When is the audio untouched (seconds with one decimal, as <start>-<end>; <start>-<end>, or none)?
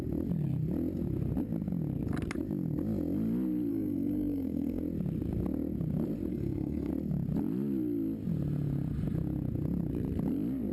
0.0-3.7; 4.8-6.3; 6.9-10.7